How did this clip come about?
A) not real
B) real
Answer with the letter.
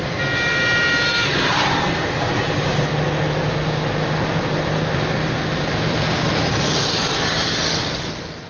B